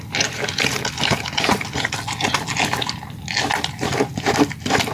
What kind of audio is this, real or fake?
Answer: real